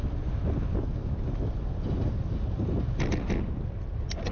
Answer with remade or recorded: recorded